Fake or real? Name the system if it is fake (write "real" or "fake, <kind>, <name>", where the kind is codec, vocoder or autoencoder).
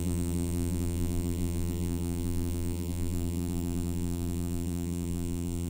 fake, vocoder, BigVGAN v2